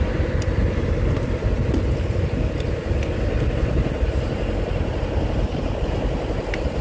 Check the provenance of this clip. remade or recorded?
recorded